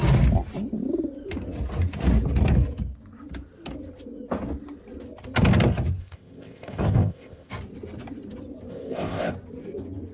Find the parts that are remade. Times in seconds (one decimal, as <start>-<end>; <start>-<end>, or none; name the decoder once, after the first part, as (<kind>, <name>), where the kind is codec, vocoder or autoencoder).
6.0-7.5 (codec, ZipCodec); 8.7-9.3